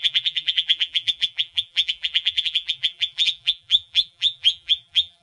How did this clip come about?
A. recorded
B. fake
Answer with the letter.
B